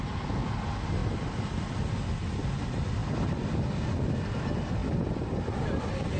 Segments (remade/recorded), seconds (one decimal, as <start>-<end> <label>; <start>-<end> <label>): 0.0-6.2 recorded